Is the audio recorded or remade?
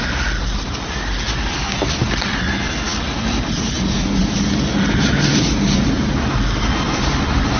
recorded